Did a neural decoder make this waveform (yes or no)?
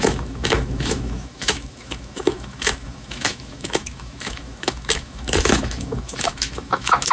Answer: yes